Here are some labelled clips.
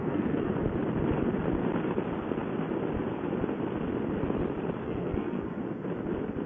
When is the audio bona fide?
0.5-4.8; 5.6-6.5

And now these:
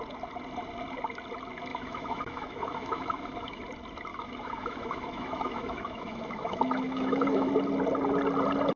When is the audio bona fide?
0.0-1.7; 3.6-4.1; 7.5-8.8

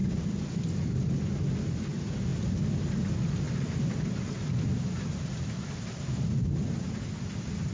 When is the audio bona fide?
0.5-2.3; 6.3-7.7

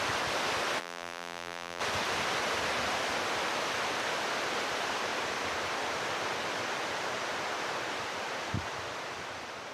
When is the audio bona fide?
0.0-0.8; 1.8-9.7

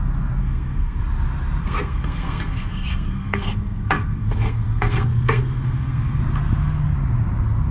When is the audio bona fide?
0.0-0.4; 1.0-1.6; 6.2-7.7